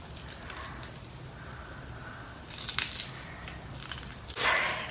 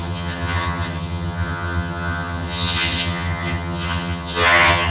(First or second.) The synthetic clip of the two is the second